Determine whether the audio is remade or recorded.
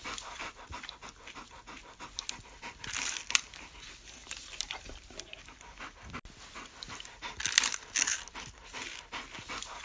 recorded